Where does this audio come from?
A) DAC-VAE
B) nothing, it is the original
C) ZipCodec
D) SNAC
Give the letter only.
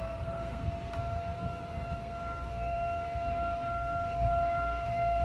D